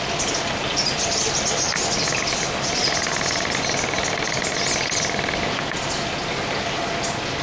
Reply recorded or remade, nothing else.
recorded